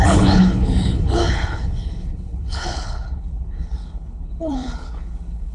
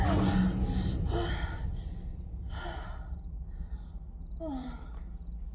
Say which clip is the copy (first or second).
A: first